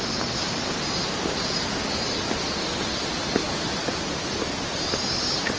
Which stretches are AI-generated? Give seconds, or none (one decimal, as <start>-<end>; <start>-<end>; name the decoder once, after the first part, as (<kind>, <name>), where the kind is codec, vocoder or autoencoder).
none